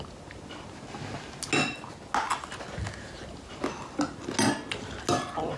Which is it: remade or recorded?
recorded